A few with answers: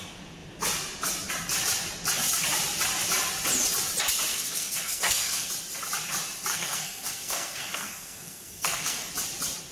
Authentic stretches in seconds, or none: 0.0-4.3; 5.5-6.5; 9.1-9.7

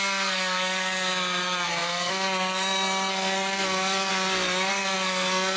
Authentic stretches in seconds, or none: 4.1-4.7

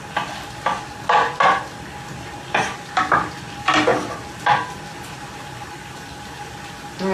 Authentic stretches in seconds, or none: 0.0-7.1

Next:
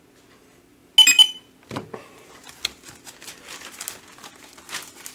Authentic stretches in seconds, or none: 0.0-5.1

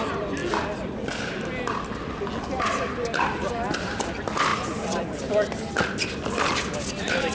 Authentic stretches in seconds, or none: 0.0-7.3

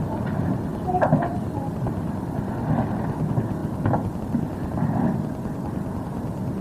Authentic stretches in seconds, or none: 0.0-0.7; 1.7-6.6

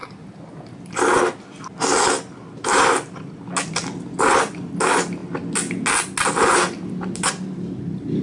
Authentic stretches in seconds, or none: 0.0-8.2

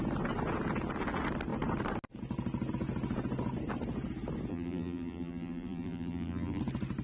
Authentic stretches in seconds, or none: 0.0-4.5; 6.6-7.0